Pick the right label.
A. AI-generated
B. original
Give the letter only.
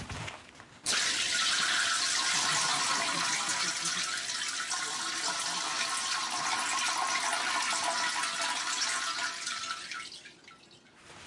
B